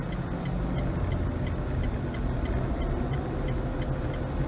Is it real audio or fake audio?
real